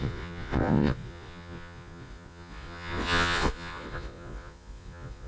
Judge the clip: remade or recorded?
remade